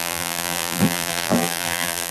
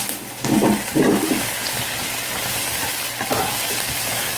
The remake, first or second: first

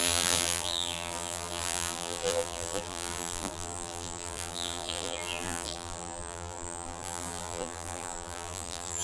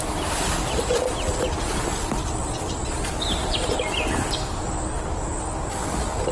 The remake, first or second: first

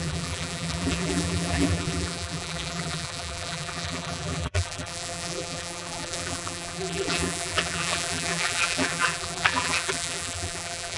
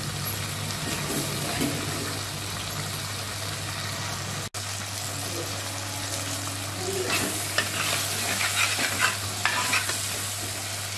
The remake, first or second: first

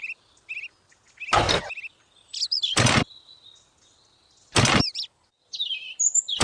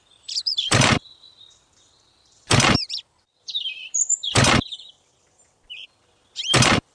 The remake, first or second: second